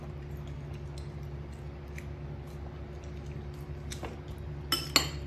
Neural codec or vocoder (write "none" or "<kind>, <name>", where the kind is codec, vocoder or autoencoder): none